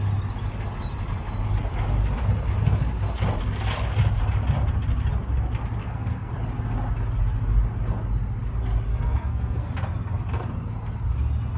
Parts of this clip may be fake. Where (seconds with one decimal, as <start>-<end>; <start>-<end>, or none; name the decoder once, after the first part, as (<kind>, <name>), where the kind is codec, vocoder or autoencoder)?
5.8-6.3 (codec, SNAC); 8.9-9.7